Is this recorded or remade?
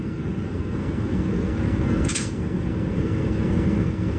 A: remade